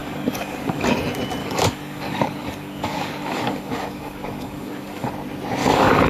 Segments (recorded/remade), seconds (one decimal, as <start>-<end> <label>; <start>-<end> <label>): 0.0-0.9 remade; 0.9-1.4 recorded; 1.4-5.1 remade; 5.1-5.6 recorded; 5.6-6.1 remade